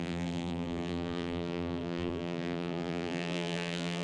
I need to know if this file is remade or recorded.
remade